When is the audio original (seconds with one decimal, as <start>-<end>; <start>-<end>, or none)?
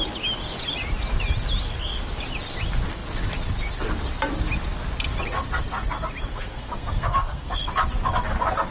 0.0-6.3; 7.7-8.7